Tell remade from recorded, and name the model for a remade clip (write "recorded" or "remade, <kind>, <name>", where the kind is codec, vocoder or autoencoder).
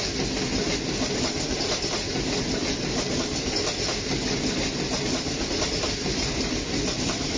recorded